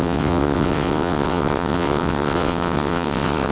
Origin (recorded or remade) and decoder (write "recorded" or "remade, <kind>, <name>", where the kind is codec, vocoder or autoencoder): remade, vocoder, WaveNeXt